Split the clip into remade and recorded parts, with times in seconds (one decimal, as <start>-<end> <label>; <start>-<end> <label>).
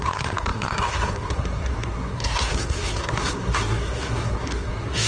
0.0-5.1 remade